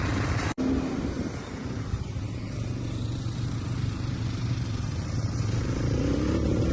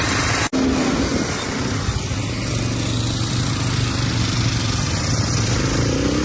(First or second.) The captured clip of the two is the second